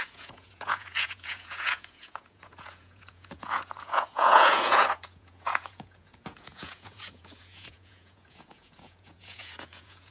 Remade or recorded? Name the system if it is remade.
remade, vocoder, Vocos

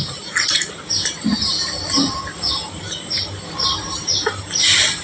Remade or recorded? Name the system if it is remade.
recorded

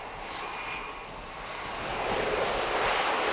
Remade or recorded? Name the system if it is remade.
recorded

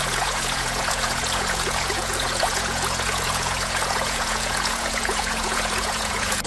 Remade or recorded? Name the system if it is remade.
remade, vocoder, Vocos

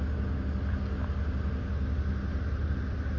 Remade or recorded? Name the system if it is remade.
recorded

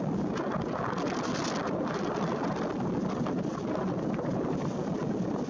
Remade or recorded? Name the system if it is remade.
recorded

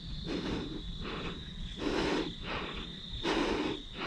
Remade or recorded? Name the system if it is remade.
recorded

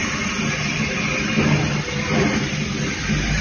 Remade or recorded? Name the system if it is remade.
recorded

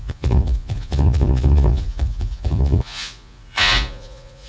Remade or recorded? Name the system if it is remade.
remade, vocoder, Vocos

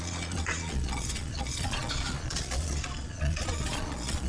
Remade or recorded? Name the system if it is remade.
remade, vocoder, Vocos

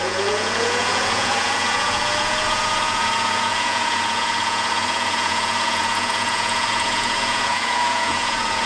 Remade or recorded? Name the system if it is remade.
remade, vocoder, Vocos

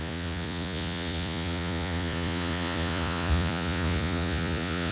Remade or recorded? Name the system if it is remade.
remade, vocoder, Vocos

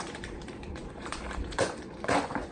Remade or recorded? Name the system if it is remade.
remade, vocoder, Vocos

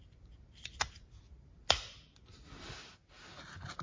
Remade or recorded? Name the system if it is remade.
recorded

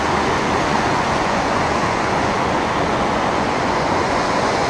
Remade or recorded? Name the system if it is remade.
remade, vocoder, Vocos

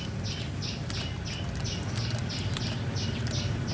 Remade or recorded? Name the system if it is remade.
recorded